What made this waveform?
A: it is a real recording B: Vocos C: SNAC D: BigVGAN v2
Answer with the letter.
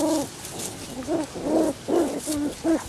A